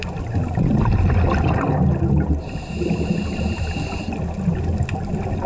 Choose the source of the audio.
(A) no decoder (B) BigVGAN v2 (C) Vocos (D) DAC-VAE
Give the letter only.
A